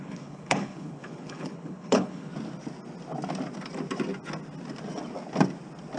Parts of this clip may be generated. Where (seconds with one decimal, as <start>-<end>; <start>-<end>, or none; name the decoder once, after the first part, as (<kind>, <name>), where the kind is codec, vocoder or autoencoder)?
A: 0.0-2.3 (codec, HILCodec)